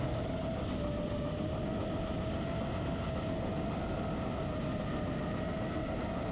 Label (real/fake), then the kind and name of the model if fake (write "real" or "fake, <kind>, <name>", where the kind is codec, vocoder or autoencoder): real